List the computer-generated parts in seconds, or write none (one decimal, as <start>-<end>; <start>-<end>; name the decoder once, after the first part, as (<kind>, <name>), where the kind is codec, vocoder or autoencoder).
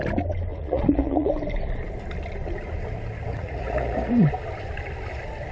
0.5-1.3 (vocoder, Vocos); 3.3-4.1